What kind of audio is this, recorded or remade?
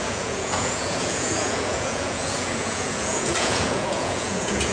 remade